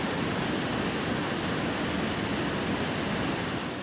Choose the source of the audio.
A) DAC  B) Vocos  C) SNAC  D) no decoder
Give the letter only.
D